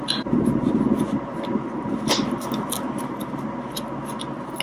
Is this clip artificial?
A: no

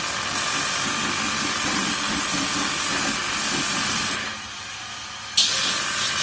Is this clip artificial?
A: no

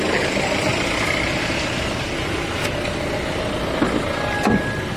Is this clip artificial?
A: no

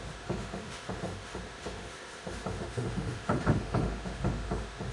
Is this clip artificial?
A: yes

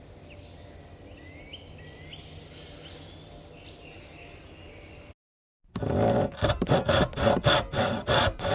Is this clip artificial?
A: no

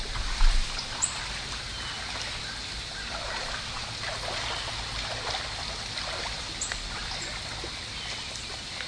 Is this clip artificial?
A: no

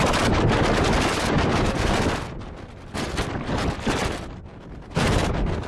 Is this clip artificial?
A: no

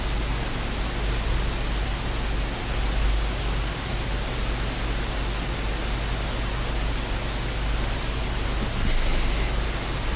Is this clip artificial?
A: no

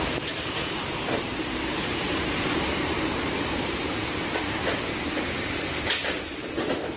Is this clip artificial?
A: yes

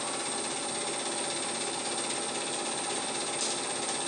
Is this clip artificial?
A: no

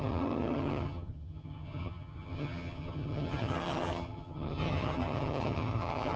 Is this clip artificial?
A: yes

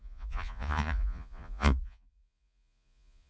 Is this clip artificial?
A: yes